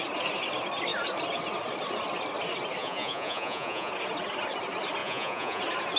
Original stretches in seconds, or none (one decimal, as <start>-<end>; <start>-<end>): 0.0-2.8; 3.9-5.0; 5.6-6.0